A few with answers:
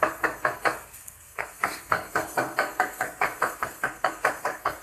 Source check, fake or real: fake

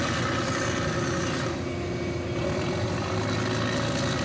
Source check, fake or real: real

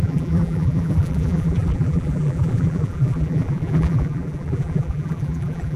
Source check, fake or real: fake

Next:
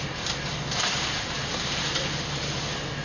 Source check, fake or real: real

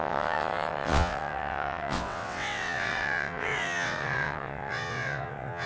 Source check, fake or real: fake